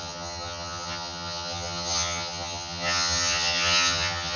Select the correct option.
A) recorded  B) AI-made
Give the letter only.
B